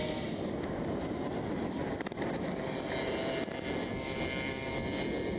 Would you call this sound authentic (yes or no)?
yes